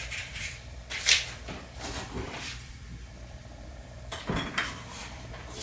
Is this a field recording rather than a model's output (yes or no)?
no